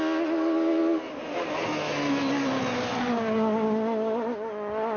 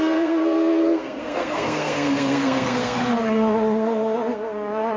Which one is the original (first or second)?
first